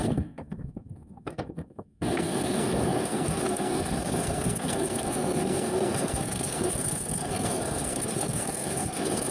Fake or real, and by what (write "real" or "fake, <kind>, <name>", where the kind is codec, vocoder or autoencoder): fake, codec, SNAC